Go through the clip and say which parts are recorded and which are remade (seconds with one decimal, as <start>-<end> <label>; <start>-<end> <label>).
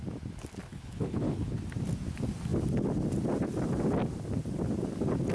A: 0.0-0.7 recorded; 0.7-1.6 remade; 1.6-5.3 recorded